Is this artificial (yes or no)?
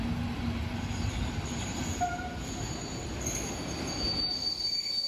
no